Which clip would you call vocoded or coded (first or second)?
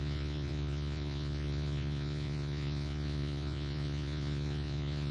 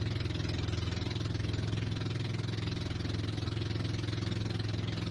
first